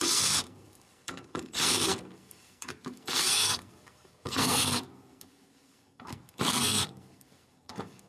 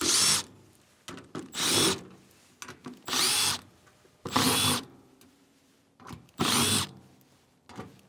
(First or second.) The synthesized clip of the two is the first